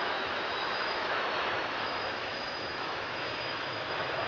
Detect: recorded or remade remade